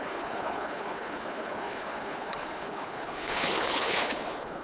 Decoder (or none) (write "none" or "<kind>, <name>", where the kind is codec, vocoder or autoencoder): codec, HILCodec